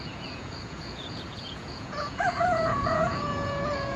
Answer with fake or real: fake